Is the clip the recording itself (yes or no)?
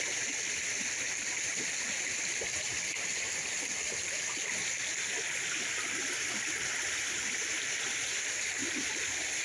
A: yes